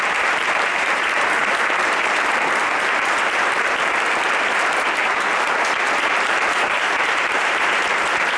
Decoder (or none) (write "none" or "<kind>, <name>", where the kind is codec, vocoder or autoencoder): vocoder, BigVGAN v2